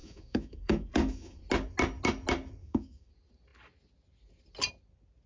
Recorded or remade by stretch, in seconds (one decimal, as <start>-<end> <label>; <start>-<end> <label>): 0.0-1.4 remade; 1.4-2.6 recorded; 2.6-3.1 remade; 3.1-5.3 recorded